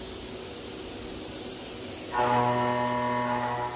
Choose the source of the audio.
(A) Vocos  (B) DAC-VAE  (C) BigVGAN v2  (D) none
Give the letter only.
D